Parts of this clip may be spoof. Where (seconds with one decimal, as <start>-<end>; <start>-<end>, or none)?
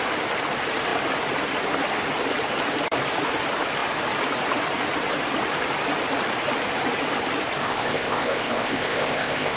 7.6-9.6